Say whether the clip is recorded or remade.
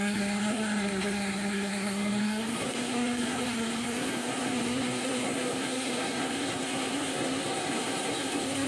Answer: remade